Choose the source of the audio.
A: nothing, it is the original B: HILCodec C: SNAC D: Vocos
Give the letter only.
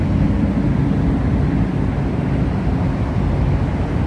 A